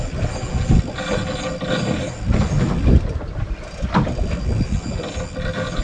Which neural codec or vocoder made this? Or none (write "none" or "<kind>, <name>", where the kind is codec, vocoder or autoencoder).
none